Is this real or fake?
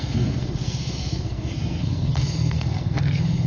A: fake